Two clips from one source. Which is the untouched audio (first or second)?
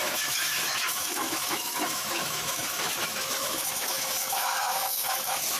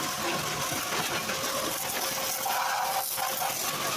second